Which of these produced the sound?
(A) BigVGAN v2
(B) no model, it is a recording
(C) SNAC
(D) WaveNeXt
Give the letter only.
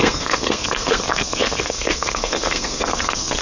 C